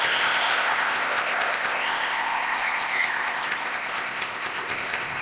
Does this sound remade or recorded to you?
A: remade